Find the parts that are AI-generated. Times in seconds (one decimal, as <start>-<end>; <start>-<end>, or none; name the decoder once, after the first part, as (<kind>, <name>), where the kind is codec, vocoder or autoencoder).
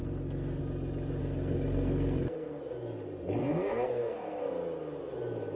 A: 0.0-0.6 (codec, SNAC); 1.2-2.6; 3.4-4.5